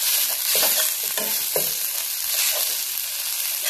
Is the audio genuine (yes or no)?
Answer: yes